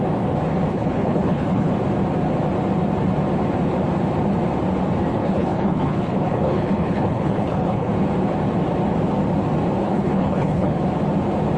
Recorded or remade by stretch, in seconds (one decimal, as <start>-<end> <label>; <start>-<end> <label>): 0.0-0.7 recorded; 0.7-1.7 remade; 1.7-5.1 recorded; 5.1-7.9 remade; 7.9-9.8 recorded; 9.8-10.8 remade; 10.8-11.6 recorded